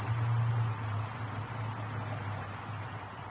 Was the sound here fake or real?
real